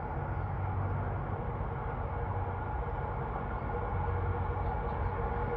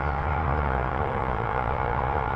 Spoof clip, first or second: second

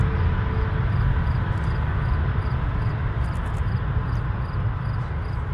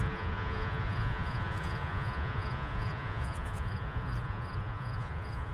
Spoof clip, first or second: second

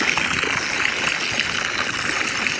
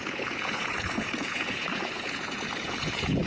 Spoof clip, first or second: second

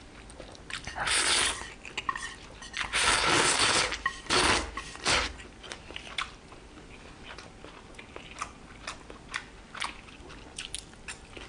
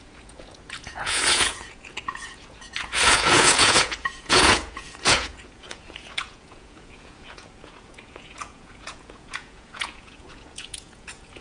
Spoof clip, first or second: second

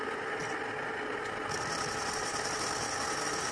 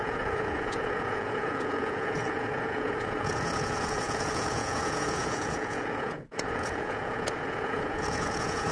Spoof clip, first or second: second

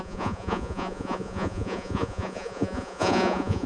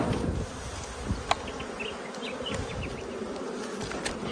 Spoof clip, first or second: first